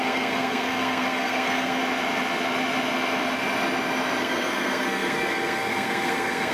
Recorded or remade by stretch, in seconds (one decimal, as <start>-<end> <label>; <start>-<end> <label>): 0.0-1.8 remade; 1.8-4.2 recorded; 4.2-6.5 remade